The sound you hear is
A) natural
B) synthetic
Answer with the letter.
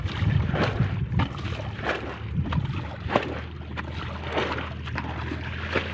A